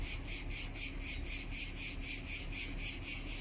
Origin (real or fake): real